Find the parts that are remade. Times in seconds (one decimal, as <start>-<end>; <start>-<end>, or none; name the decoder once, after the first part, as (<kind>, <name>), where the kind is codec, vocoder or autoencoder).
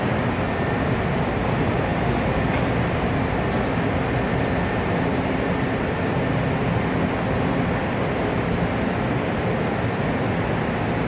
none